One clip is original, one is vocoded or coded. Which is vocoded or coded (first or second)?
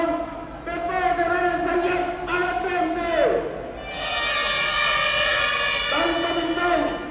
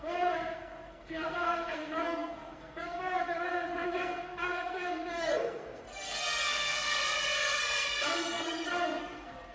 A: second